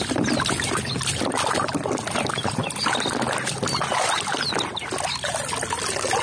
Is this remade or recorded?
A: recorded